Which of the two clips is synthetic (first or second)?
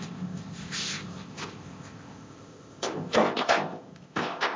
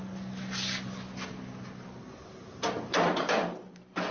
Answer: first